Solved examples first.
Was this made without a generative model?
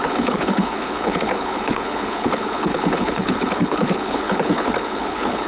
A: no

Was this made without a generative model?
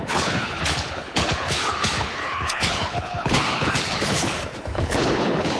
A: no